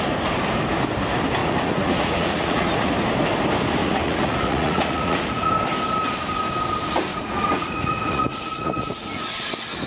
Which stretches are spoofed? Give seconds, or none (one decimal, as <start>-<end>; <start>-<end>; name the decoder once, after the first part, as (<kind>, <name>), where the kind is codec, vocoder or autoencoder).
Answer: 1.4-2.9 (vocoder, Vocos); 3.8-5.5; 7.1-9.5